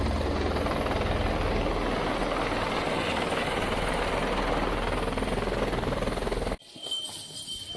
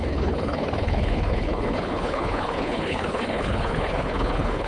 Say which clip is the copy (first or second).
second